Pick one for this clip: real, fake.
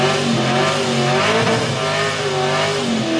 real